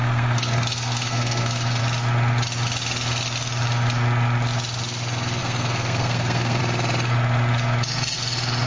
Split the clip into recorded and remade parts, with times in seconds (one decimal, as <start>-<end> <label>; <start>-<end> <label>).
0.0-1.8 remade; 1.8-5.4 recorded; 5.4-6.6 remade; 6.6-8.7 recorded

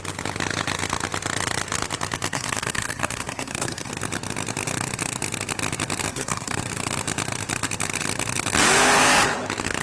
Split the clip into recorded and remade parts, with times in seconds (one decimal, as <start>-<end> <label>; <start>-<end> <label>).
0.0-2.3 recorded; 2.3-3.9 remade; 3.9-6.1 recorded; 6.1-6.6 remade; 6.6-9.8 recorded

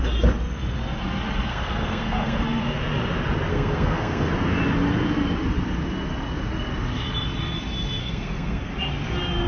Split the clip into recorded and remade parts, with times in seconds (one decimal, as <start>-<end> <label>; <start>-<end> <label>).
0.0-1.5 recorded; 1.5-2.6 remade; 2.6-3.5 recorded; 3.5-4.3 remade; 4.3-8.0 recorded; 8.0-8.7 remade; 8.7-9.5 recorded

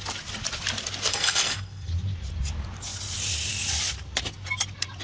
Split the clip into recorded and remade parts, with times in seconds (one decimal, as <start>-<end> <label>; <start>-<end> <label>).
0.0-1.1 recorded; 1.1-1.9 remade; 1.9-5.0 recorded